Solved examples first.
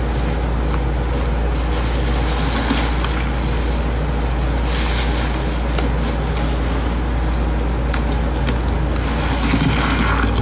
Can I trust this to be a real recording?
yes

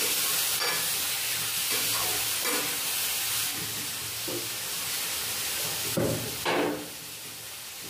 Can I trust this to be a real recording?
yes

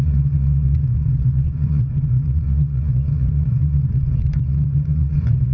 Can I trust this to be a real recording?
no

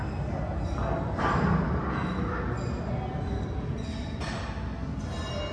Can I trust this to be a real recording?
yes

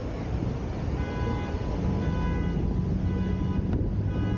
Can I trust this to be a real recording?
yes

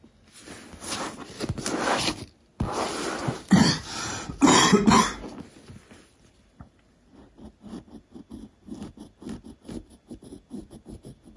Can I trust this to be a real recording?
yes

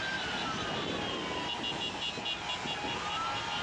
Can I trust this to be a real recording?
yes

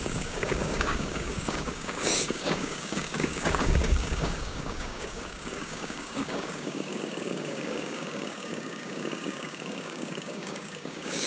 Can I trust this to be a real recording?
no